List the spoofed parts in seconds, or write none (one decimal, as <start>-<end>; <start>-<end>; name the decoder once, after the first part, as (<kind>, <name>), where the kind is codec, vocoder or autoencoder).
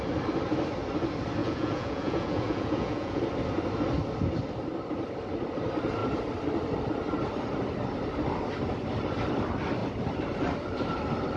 1.4-3.2 (vocoder, Vocos)